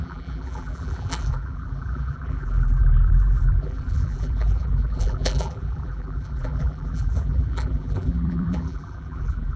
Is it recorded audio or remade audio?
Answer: remade